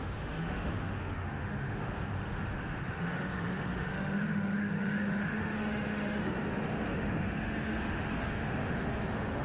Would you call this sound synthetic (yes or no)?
yes